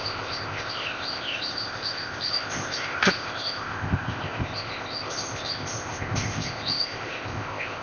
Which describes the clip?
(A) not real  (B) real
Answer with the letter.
A